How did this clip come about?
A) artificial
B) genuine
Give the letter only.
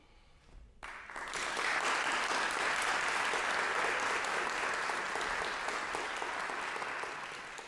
B